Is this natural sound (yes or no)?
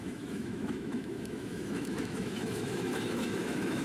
no